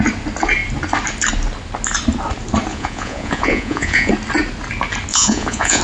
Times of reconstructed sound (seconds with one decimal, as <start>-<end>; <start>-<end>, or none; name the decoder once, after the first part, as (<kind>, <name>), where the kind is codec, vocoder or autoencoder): 2.7-4.1 (vocoder, Vocos); 5.1-5.8